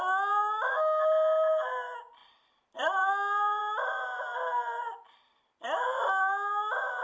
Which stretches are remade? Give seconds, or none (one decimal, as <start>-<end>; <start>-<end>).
2.2-3.1